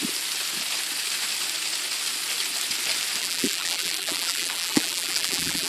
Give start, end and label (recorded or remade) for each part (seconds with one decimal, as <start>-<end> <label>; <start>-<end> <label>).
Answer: 0.0-3.2 recorded; 3.2-5.7 remade